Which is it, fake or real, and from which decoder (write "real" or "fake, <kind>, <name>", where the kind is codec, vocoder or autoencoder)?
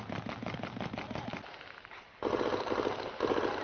real